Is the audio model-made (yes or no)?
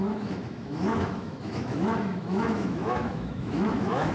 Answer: yes